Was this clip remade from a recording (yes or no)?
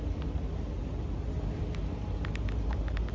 no